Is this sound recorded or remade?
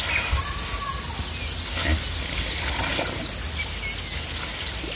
recorded